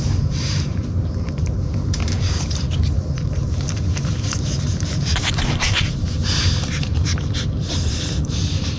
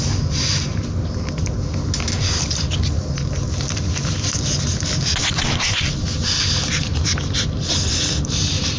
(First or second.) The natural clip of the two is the second